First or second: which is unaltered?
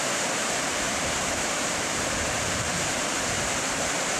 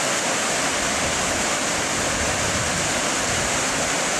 second